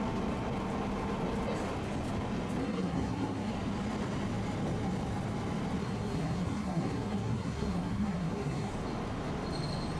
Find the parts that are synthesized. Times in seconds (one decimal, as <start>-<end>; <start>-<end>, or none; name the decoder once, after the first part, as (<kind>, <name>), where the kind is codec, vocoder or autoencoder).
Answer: 2.6-3.5 (codec, SNAC); 5.8-8.7